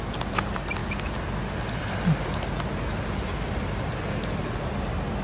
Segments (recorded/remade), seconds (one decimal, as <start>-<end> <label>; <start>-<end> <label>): 0.0-5.2 recorded

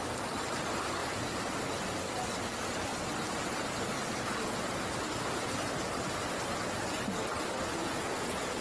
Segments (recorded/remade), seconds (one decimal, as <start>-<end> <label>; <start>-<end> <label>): 0.0-7.8 recorded; 7.8-8.6 remade

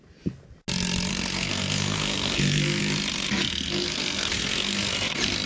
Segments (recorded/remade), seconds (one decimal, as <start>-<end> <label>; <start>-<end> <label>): 0.0-1.1 recorded; 1.1-2.8 remade; 2.8-3.5 recorded; 3.5-4.9 remade; 4.9-5.5 recorded

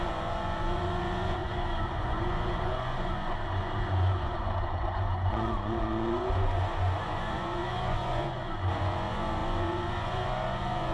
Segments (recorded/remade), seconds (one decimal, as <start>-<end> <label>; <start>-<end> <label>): 0.0-10.9 remade

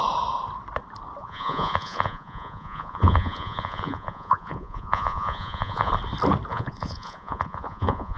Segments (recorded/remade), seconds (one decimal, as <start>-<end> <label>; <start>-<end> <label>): 0.0-1.2 recorded; 1.2-5.9 remade; 5.9-6.5 recorded; 6.5-8.2 remade